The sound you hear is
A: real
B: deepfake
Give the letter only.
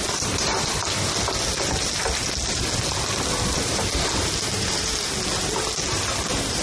A